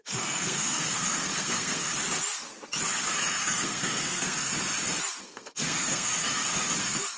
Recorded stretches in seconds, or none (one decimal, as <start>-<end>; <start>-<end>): 1.9-3.4; 4.5-5.2; 6.1-6.8